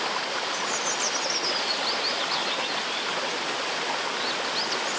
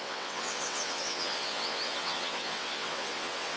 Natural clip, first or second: first